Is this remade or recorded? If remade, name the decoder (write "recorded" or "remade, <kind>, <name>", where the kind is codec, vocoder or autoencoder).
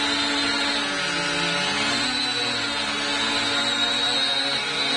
recorded